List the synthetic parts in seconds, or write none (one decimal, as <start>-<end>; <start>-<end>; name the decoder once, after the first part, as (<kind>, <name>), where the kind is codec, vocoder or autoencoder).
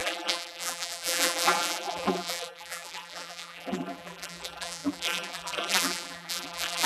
0.0-6.9 (vocoder, BigVGAN v2)